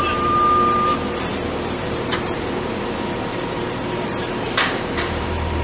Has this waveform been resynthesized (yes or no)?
yes